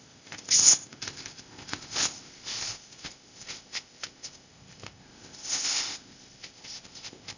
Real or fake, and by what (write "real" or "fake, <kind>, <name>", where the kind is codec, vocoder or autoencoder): fake, codec, ZipCodec